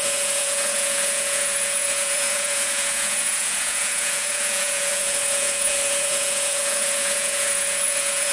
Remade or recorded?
remade